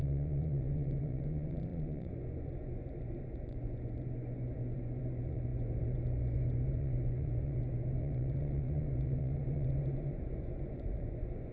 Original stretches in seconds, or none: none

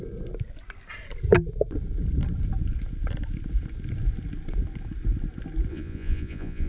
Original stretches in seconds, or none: 0.0-5.7